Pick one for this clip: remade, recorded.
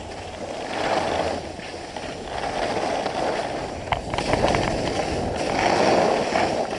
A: recorded